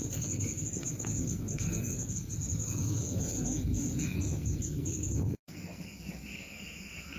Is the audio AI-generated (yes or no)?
yes